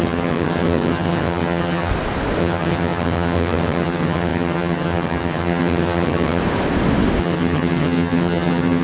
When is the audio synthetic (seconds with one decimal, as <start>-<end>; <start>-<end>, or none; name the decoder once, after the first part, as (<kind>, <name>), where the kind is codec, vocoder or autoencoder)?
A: 0.0-1.9 (vocoder, HiFi-GAN); 2.4-6.4; 7.2-8.8